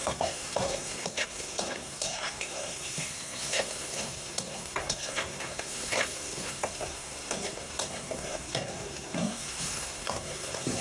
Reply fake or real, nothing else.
fake